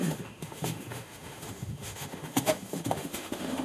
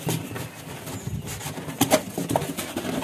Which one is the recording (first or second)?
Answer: second